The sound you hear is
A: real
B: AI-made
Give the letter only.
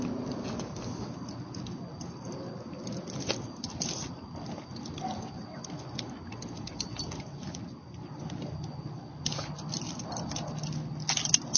A